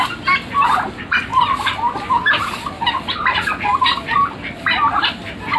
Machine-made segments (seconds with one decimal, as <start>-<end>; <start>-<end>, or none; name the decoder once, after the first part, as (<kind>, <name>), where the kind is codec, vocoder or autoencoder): none